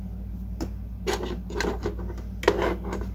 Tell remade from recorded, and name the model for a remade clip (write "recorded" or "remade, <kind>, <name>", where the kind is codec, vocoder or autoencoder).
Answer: recorded